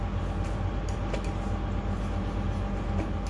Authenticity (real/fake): real